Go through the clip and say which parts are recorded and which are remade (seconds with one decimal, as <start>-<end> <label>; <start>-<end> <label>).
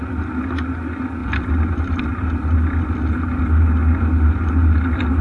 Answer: 0.0-5.2 recorded